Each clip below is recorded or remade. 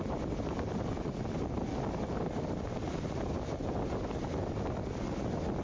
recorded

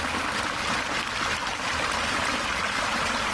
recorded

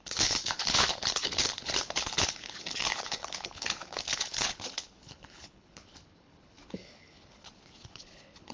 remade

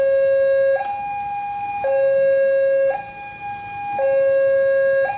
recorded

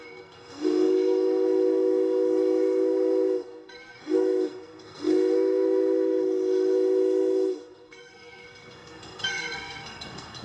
remade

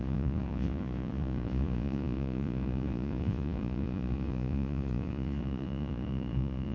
remade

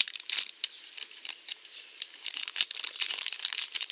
remade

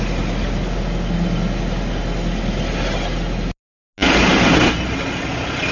recorded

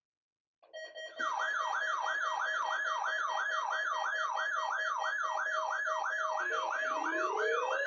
recorded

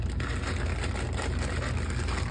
recorded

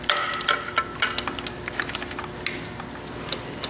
recorded